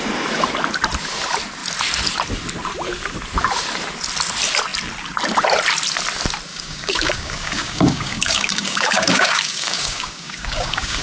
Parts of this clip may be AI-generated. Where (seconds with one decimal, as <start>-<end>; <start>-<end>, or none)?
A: 6.5-11.0